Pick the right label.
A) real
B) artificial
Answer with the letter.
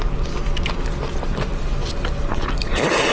A